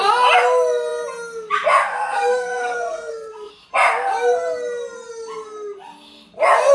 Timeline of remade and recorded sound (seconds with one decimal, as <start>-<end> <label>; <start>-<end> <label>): 0.0-1.9 recorded; 1.9-3.5 remade; 3.5-6.7 recorded

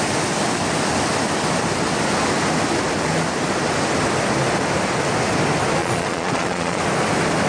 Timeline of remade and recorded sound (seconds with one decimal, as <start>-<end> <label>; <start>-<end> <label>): 0.0-5.8 recorded; 5.8-6.8 remade; 6.8-7.5 recorded